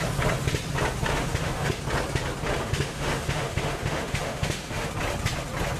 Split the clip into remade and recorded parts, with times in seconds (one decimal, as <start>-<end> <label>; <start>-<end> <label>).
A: 0.0-1.1 recorded; 1.1-1.8 remade; 1.8-2.6 recorded; 2.6-4.9 remade; 4.9-5.8 recorded

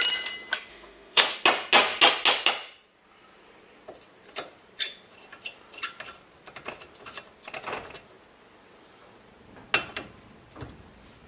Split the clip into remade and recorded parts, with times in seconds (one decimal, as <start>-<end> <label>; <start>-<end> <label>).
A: 0.0-0.7 recorded; 0.7-1.2 remade; 1.2-11.3 recorded

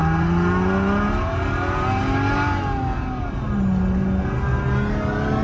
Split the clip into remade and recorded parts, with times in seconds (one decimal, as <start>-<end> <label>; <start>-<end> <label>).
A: 0.0-5.4 recorded